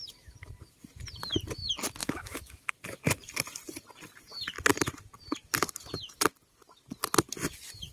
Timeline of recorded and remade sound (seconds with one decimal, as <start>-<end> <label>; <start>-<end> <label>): 0.0-2.0 recorded; 2.0-2.7 remade; 2.7-7.9 recorded